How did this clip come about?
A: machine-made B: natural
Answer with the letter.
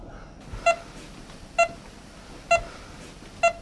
B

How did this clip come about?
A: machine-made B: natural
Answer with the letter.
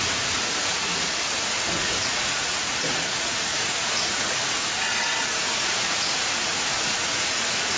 A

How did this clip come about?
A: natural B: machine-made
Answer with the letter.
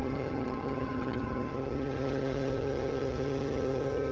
B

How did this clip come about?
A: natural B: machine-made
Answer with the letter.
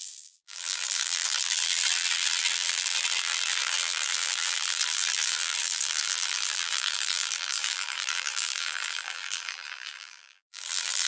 B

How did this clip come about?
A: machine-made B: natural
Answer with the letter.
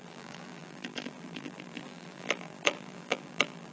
A